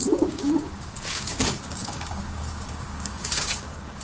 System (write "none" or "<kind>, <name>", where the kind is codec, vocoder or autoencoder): codec, DAC